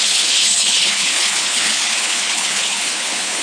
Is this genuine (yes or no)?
no